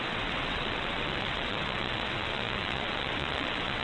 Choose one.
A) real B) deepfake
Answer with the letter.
B